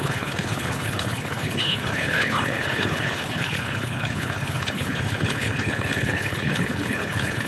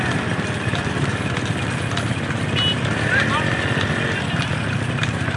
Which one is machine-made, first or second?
first